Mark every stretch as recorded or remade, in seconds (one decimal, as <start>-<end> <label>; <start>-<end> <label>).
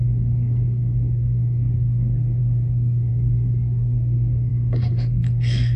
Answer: 0.0-5.8 remade